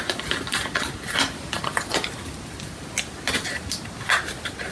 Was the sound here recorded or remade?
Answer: recorded